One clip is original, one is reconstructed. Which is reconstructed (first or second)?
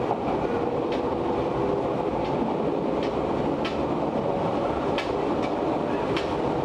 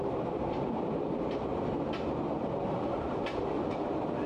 second